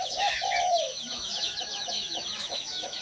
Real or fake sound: fake